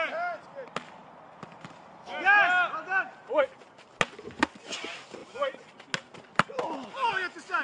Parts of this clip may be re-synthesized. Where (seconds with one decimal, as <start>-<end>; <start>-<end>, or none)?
none